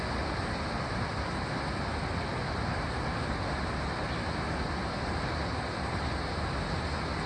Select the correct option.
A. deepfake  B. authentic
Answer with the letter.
B